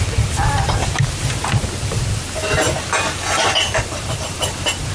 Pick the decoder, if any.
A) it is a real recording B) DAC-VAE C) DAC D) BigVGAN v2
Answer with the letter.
A